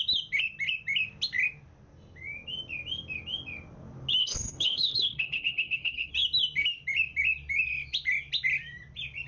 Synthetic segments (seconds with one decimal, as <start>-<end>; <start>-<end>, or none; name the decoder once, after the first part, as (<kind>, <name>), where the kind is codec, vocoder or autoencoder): 4.2-6.1 (codec, HILCodec)